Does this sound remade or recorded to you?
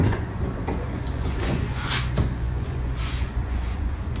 remade